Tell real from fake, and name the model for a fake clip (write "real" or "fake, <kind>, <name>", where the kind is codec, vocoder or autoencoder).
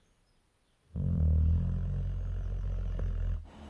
real